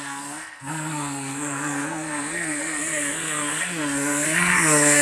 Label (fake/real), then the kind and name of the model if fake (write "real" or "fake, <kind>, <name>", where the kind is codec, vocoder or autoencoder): fake, codec, SNAC